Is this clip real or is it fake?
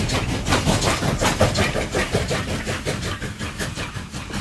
real